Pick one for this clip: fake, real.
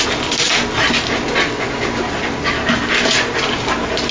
real